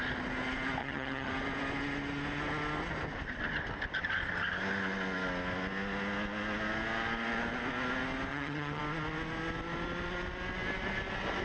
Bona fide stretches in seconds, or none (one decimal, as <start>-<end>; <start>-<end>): 0.0-0.8; 1.3-8.3; 8.8-11.4